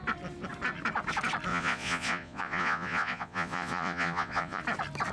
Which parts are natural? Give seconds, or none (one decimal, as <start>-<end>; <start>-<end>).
0.0-1.5; 4.6-5.1